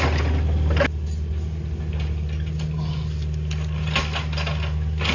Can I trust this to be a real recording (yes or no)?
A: yes